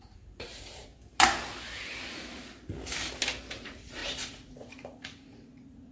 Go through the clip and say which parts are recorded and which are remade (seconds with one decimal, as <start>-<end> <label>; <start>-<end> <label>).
0.0-0.9 remade; 0.9-3.5 recorded; 3.5-5.9 remade